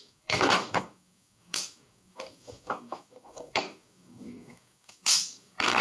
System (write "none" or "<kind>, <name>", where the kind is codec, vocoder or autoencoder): codec, DAC